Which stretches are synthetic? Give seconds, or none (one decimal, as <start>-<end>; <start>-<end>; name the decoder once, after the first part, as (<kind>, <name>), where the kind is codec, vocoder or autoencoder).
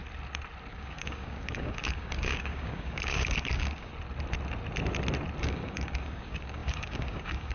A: 0.7-3.9 (codec, DAC); 5.4-7.5